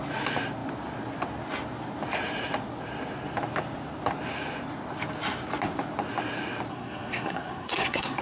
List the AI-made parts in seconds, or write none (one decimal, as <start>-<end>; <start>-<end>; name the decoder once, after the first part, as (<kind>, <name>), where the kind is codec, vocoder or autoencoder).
6.7-8.2 (codec, SNAC)